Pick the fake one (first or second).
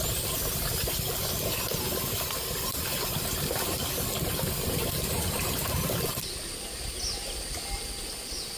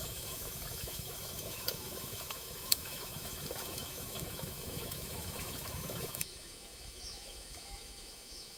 second